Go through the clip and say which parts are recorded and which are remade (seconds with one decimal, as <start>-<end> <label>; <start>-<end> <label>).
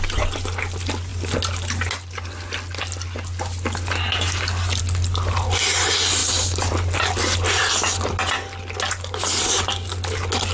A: 0.0-6.2 recorded; 6.2-7.7 remade; 7.7-10.5 recorded